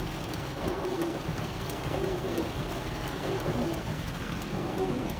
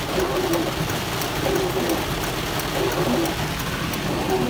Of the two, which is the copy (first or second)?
first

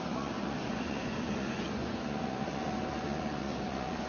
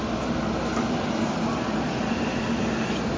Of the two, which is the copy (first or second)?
first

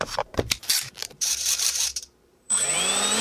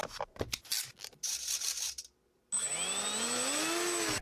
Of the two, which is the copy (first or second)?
first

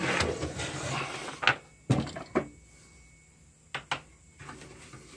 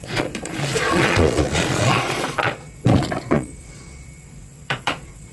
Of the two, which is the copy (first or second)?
second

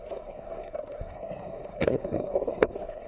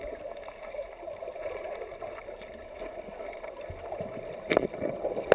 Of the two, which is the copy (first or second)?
first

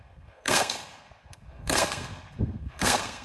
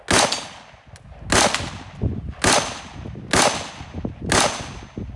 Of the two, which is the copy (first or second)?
first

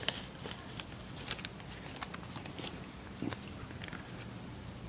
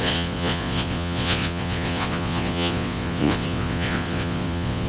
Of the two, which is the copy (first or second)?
second